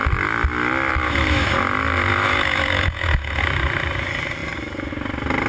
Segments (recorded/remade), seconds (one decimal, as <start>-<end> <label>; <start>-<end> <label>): 0.0-0.9 recorded; 0.9-1.5 remade; 1.5-2.1 recorded; 2.1-3.4 remade; 3.4-5.5 recorded